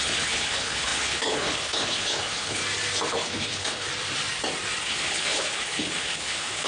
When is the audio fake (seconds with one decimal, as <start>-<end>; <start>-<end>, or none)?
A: 0.0-2.6; 3.1-3.9; 4.9-6.7